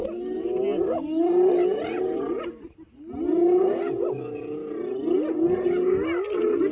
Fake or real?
real